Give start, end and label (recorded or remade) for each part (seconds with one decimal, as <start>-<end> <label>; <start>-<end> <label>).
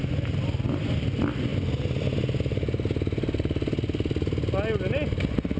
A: 0.0-5.6 recorded